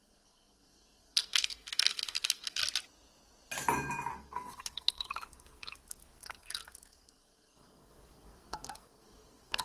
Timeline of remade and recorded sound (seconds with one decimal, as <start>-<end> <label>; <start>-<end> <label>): 0.0-2.6 remade; 2.6-4.1 recorded; 4.1-9.6 remade